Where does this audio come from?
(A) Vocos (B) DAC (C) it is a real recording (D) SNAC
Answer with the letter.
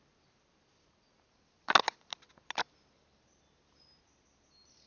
C